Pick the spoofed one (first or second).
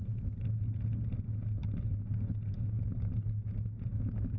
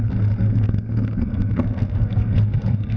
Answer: second